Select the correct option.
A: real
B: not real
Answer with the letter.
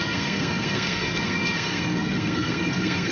B